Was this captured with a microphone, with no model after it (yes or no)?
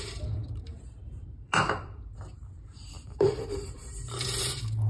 no